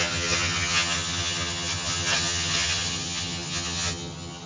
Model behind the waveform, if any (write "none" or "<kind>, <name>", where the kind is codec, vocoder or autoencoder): vocoder, HiFi-GAN